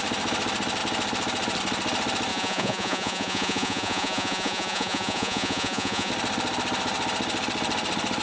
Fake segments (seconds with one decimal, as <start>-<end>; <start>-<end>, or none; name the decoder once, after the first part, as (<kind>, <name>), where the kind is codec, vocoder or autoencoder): 2.3-6.1 (vocoder, Vocos)